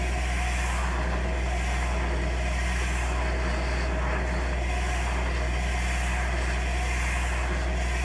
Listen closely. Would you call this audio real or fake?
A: real